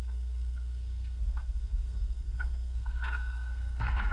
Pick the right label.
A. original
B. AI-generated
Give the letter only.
B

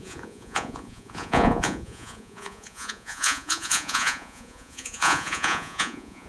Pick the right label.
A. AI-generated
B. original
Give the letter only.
A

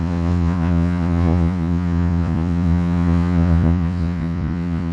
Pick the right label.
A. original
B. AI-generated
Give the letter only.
B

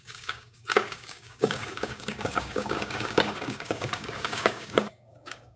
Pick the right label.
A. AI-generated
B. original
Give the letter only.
A